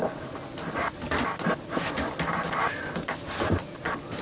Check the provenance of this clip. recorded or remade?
recorded